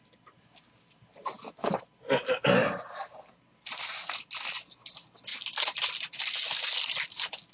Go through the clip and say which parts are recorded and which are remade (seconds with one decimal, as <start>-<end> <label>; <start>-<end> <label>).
0.0-7.5 recorded